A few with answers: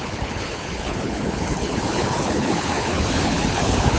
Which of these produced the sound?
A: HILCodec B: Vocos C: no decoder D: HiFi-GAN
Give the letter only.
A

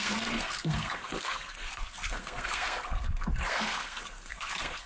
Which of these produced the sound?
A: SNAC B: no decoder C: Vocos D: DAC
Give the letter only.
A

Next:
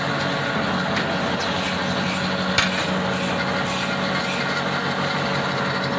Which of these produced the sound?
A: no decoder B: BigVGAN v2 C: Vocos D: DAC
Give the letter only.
A